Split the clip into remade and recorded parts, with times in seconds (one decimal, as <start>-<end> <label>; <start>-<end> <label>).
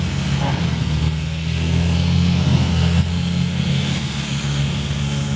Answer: 0.0-5.4 remade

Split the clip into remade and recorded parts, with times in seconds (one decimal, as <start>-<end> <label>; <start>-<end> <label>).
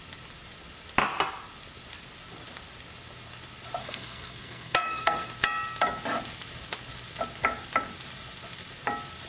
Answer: 0.0-3.8 recorded; 3.8-5.3 remade; 5.3-9.3 recorded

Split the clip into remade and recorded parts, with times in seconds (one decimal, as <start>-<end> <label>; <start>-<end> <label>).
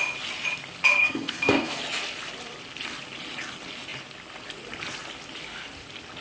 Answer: 0.0-0.9 recorded; 0.9-1.8 remade; 1.8-6.2 recorded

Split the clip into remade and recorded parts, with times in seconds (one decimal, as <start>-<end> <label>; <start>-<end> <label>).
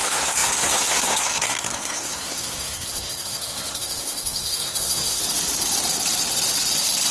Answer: 0.0-5.2 remade; 5.2-7.1 recorded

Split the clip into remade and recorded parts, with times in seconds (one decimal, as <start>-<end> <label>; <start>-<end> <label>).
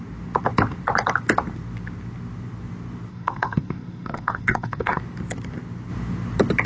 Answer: 0.0-3.1 recorded; 3.1-5.0 remade; 5.0-6.7 recorded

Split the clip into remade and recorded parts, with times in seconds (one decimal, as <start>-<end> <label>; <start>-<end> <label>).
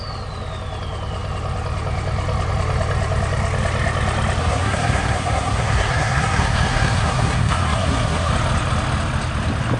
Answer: 0.0-4.4 recorded; 4.4-8.3 remade; 8.3-9.8 recorded